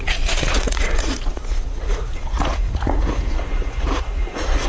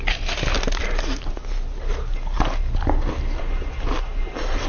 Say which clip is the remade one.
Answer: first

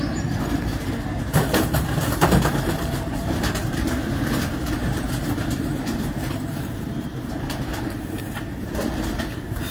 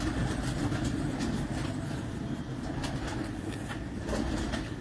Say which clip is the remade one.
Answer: first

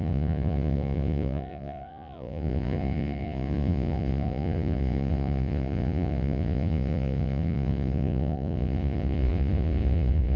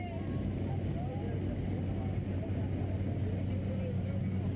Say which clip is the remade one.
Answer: first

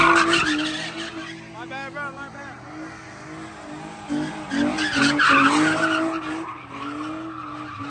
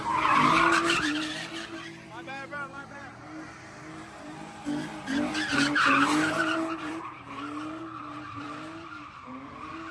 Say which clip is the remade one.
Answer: second